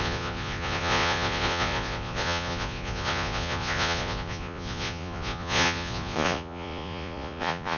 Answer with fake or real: fake